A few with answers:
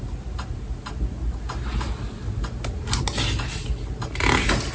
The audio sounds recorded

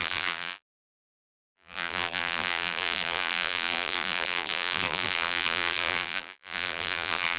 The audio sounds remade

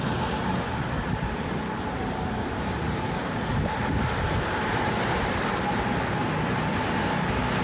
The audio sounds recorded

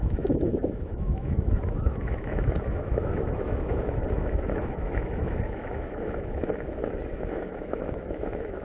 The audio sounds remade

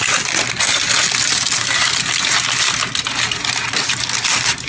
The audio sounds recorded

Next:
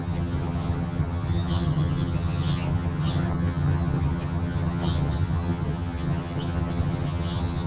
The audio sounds remade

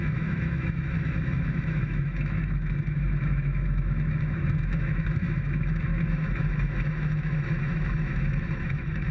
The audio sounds remade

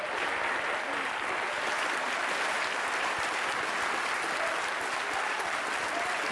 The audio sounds recorded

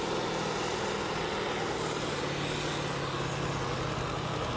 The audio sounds recorded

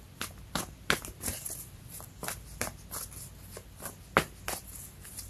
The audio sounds recorded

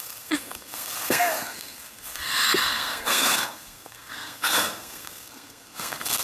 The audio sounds remade